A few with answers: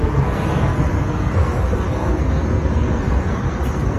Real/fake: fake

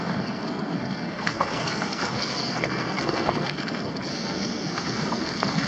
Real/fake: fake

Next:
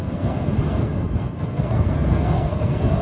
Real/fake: fake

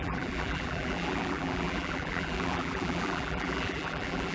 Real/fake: fake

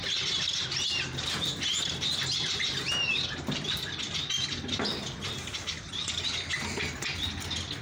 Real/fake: real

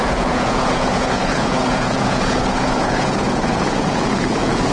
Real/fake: fake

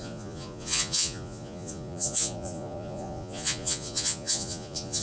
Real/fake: fake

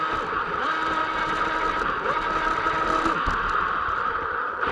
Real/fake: real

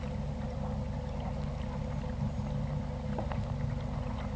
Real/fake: real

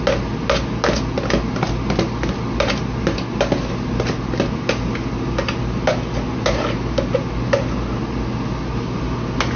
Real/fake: real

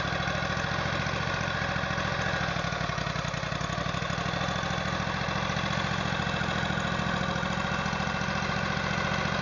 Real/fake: real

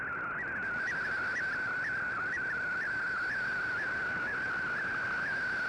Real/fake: real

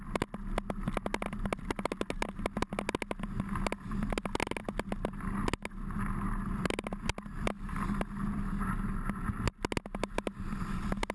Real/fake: real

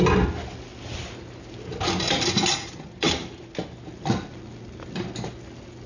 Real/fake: real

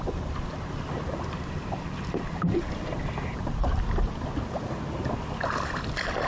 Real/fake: real